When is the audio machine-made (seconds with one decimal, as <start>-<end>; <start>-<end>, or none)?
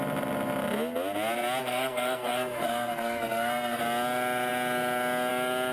1.6-3.8